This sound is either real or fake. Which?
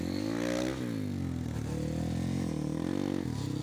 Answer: real